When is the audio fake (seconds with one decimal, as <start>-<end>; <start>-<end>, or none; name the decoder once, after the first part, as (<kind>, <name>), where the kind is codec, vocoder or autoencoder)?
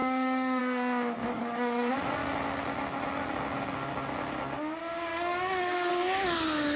0.0-0.6 (codec, DAC); 1.2-1.9; 5.1-5.9